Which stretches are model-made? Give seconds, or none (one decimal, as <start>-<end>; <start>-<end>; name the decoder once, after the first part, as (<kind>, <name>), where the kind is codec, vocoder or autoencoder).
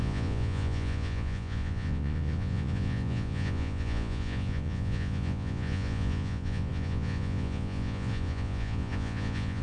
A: 0.0-9.6 (vocoder, Vocos)